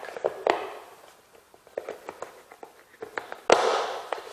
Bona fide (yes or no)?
yes